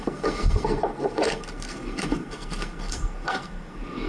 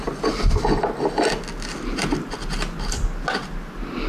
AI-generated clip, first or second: first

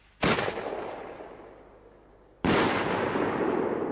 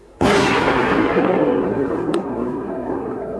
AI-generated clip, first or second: second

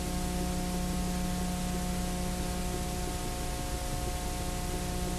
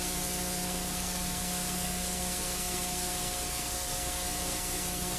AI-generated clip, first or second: second